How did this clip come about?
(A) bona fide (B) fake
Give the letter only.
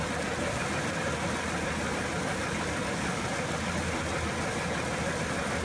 A